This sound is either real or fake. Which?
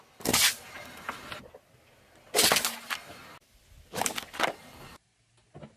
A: real